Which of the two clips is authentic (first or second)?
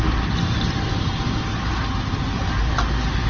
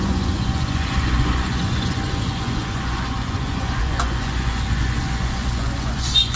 first